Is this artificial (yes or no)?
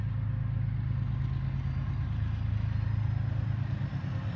no